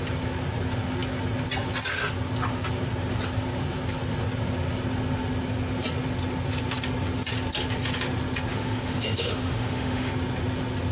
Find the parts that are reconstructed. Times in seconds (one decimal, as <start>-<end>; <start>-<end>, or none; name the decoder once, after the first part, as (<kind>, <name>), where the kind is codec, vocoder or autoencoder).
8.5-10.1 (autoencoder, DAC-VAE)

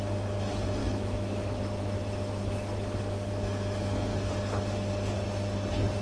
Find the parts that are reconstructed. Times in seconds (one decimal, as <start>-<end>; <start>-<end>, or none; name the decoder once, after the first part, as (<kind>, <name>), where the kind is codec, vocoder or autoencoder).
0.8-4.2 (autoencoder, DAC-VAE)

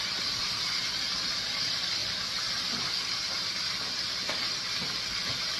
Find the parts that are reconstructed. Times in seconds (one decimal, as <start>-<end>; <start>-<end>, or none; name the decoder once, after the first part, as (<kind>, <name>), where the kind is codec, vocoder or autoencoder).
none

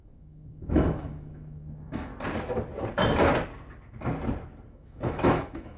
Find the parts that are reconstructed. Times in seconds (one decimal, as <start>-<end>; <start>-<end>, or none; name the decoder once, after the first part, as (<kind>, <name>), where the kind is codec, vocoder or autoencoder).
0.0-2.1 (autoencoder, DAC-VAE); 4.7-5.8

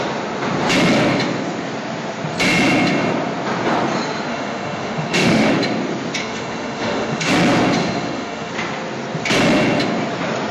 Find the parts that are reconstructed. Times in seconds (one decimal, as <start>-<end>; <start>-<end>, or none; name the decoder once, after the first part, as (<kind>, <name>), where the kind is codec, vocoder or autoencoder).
4.3-5.5 (autoencoder, DAC-VAE); 6.2-7.3; 7.8-8.5

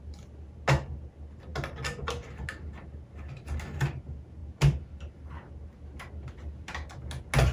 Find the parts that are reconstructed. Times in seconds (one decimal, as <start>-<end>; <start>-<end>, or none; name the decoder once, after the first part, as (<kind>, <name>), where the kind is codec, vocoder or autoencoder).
none

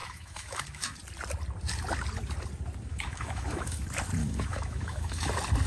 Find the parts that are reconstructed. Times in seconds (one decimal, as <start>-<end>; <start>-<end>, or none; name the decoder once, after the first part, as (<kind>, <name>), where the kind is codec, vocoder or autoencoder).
0.0-1.0 (autoencoder, DAC-VAE); 2.9-3.8; 4.2-5.3

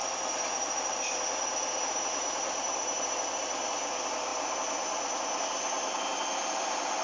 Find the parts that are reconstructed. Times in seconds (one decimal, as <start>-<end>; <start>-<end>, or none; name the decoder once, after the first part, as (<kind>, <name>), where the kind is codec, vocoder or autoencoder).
none